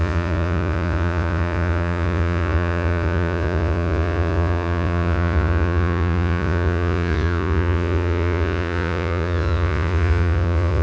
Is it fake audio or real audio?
fake